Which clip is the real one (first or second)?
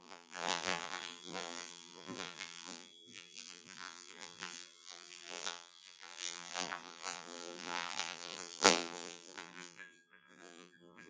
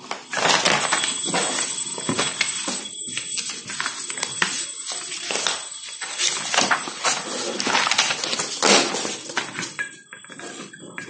second